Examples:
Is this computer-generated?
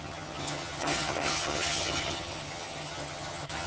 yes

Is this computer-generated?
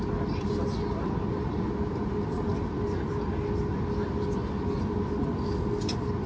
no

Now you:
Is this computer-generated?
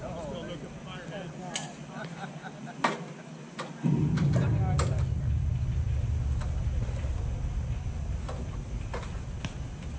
no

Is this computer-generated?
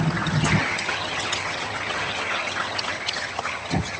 yes